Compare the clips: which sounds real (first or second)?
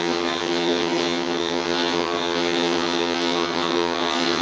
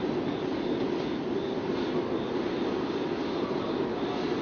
second